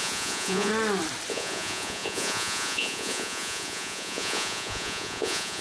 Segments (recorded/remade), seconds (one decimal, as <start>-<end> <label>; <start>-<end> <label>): 0.0-0.7 remade; 0.7-1.3 recorded; 1.3-5.6 remade